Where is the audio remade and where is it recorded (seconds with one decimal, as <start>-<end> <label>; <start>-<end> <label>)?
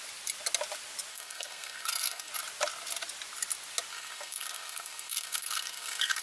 0.0-1.1 recorded; 1.1-2.3 remade; 2.3-3.9 recorded; 3.9-6.2 remade